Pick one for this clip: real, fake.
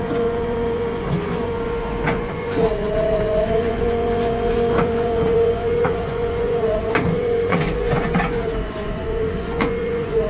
fake